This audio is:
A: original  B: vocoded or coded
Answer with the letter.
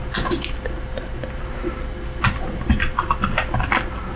A